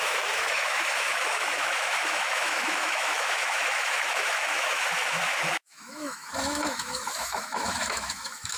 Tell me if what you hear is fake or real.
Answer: fake